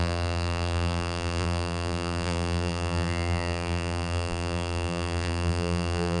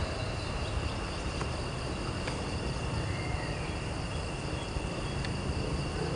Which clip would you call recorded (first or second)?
second